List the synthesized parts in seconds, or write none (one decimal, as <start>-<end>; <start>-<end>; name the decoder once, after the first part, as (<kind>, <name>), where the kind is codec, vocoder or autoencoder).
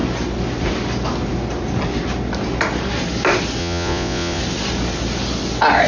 3.6-4.4 (vocoder, Vocos)